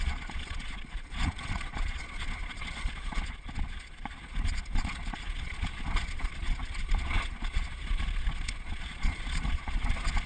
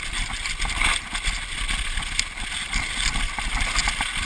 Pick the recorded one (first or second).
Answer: second